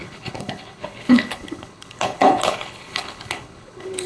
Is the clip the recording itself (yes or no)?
no